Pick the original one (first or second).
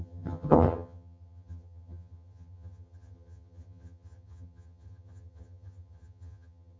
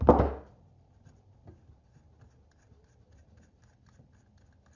second